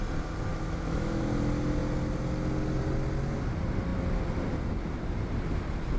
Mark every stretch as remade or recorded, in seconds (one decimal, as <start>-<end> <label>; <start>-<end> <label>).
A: 0.0-0.5 recorded; 0.5-1.2 remade; 1.2-6.0 recorded